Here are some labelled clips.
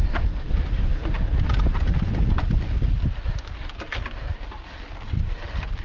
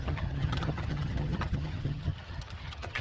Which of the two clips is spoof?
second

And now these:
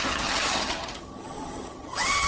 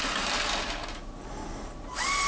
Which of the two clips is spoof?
first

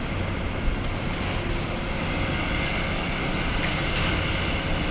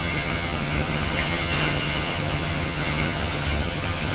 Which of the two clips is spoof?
second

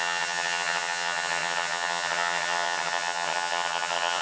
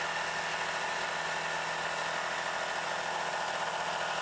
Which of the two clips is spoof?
first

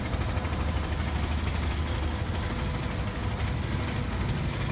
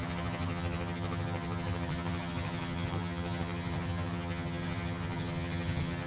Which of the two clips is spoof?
second